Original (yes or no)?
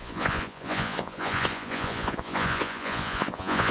no